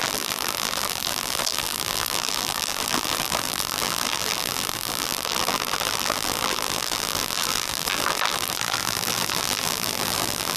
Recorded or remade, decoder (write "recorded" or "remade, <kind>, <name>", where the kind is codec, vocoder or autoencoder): remade, vocoder, BigVGAN v2